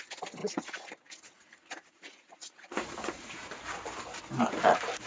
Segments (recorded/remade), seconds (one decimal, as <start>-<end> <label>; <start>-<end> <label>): 0.0-0.4 recorded; 0.4-3.5 remade; 3.5-5.1 recorded